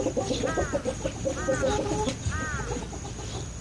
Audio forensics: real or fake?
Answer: real